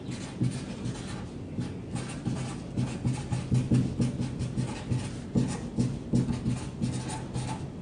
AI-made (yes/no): no